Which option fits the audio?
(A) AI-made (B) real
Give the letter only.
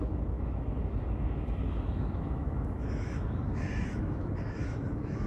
A